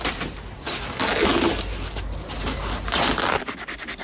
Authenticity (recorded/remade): recorded